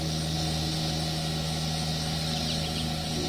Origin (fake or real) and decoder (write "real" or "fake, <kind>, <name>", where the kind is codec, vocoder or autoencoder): real